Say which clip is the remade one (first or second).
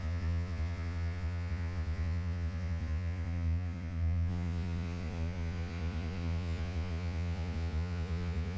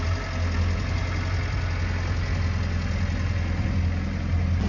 first